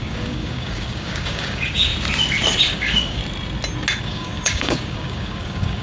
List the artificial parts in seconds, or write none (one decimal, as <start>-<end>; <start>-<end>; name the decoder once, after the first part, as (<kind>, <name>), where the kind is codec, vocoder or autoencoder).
0.0-1.9 (codec, DAC); 2.6-3.2; 4.0-5.8